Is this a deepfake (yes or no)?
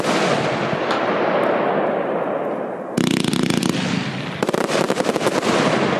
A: no